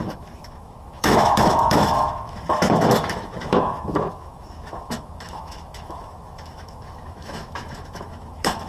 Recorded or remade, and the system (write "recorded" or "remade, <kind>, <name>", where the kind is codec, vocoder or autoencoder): remade, autoencoder, DAC-VAE